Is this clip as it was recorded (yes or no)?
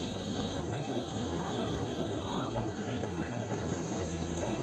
no